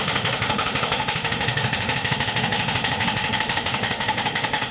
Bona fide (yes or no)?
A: no